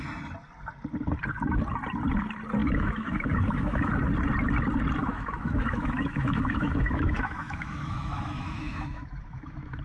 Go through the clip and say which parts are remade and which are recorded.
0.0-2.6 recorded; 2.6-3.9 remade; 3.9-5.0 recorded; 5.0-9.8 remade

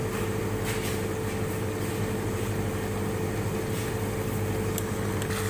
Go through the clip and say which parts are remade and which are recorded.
0.0-5.5 recorded

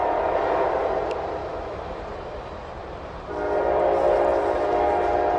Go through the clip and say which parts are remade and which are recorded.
0.0-1.4 recorded; 1.4-2.0 remade; 2.0-5.4 recorded